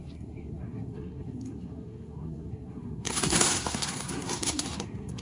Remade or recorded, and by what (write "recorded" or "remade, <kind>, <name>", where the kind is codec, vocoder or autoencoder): remade, codec, SNAC